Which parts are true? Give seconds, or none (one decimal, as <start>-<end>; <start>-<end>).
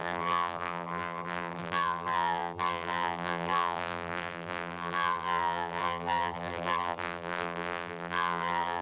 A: none